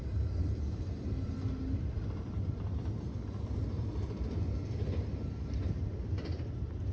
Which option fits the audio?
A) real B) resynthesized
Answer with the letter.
B